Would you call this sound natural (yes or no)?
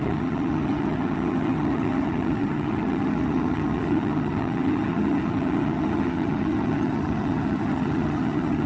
no